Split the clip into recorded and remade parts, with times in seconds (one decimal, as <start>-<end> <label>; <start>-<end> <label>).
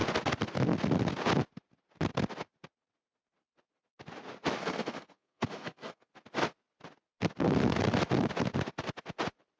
0.0-4.6 recorded; 4.6-6.1 remade; 6.1-9.6 recorded